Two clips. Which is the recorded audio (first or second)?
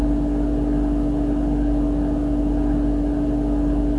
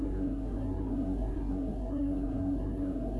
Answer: first